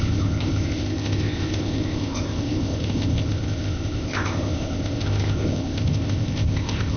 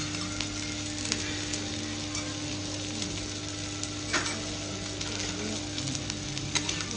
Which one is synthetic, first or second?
first